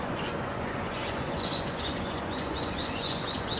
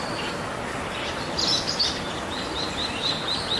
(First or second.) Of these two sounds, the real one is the second